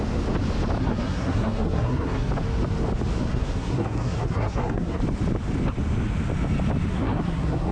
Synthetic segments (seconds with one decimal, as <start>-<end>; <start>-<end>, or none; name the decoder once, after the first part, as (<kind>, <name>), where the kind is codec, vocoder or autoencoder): 0.8-2.3 (codec, SNAC); 3.2-5.0; 6.9-7.7